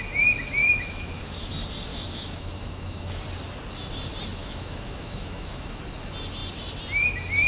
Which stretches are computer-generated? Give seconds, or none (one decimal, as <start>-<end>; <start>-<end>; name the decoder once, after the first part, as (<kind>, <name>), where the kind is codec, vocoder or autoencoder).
0.6-1.5 (autoencoder, DAC-VAE); 1.9-3.2; 4.4-5.8